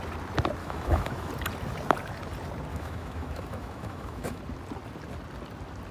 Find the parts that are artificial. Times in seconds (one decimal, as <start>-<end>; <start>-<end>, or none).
0.6-1.3; 2.7-4.4